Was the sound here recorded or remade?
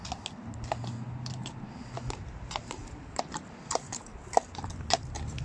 recorded